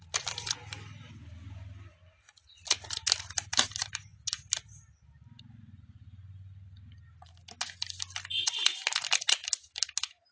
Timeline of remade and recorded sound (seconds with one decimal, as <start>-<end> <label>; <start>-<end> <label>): 0.0-10.3 recorded